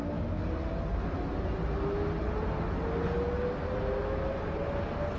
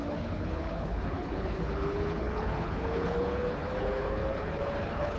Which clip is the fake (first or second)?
second